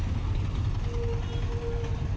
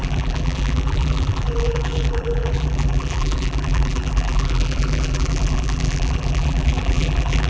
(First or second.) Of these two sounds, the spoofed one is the second